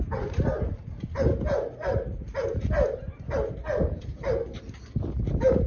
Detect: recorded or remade recorded